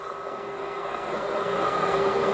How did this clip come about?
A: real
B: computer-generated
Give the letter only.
B